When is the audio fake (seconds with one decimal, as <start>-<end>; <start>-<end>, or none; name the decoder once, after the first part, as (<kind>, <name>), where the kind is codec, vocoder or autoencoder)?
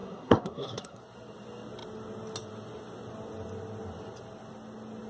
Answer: 0.0-1.0 (codec, SNAC)